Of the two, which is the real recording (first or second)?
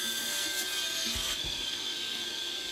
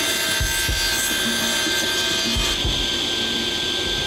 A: second